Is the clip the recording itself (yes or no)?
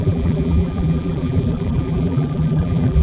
no